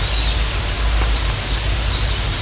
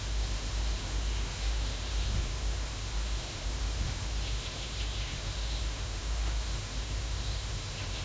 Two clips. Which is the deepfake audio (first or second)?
second